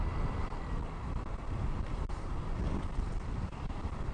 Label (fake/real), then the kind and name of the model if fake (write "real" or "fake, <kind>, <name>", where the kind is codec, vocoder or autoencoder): real